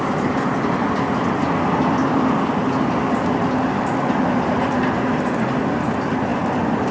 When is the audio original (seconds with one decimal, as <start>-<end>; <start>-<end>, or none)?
0.0-6.9